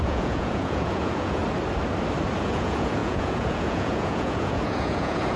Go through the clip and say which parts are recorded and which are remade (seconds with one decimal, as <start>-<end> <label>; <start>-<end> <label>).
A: 0.0-1.4 remade; 1.4-2.4 recorded; 2.4-5.4 remade